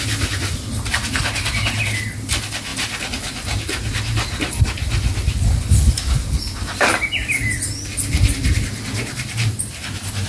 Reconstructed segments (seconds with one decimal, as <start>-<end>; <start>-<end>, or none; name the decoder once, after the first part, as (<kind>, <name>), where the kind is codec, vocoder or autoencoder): none